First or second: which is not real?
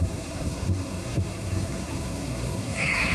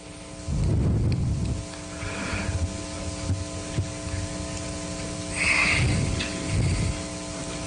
first